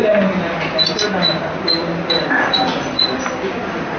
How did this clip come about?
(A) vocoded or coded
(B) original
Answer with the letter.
B